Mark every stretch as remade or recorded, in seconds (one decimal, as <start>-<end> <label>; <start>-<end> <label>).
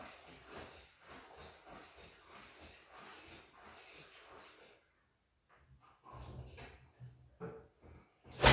0.0-8.5 recorded